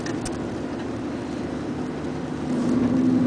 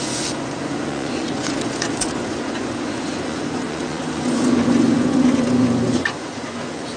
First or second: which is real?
first